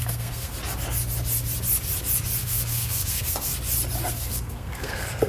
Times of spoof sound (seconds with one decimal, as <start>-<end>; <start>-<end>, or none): 0.0-0.5; 2.4-3.5; 4.1-5.3